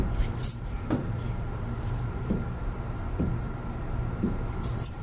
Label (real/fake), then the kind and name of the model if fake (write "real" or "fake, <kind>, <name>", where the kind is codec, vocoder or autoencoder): fake, vocoder, BigVGAN v2